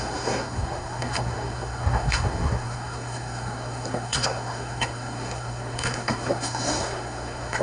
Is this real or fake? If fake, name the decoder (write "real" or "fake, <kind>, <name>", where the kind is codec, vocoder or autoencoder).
fake, codec, SNAC